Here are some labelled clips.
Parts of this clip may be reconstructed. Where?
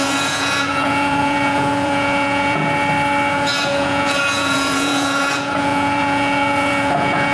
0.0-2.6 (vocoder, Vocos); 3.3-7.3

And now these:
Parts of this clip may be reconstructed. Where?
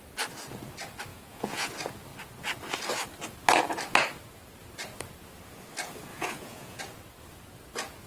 1.1-1.7 (vocoder, Vocos); 6.1-6.8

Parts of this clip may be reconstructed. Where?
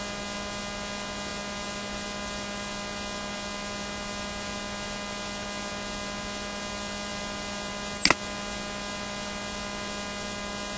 none